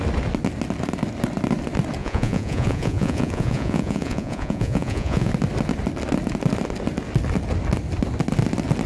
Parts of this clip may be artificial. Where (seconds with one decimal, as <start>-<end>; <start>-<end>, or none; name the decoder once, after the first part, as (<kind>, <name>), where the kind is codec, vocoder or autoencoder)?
2.0-5.3 (vocoder, Vocos)